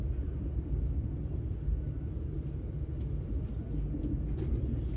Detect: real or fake fake